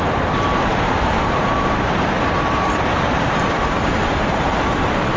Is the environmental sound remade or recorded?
remade